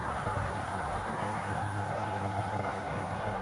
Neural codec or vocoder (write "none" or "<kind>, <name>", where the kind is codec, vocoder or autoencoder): codec, SNAC